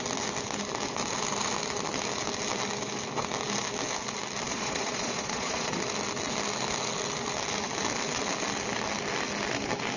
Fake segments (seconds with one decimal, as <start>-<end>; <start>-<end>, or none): 4.5-5.8